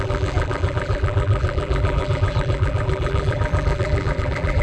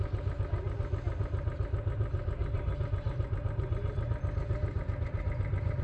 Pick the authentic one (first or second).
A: second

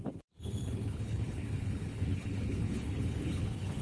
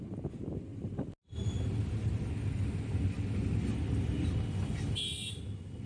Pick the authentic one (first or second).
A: second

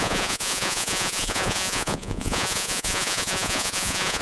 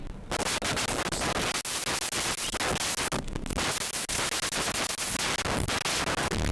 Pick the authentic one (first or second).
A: second